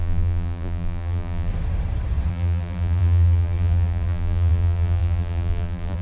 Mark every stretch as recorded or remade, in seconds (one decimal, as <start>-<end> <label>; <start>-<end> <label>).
0.0-1.5 remade; 1.5-2.3 recorded; 2.3-6.0 remade